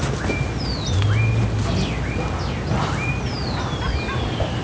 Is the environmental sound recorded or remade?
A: recorded